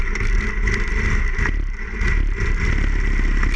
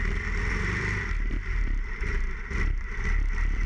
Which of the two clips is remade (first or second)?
second